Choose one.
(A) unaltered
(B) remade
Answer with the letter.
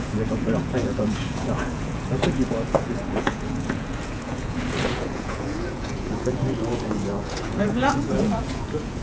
B